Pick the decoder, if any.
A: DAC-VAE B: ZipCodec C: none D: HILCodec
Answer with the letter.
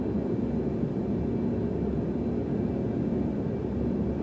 C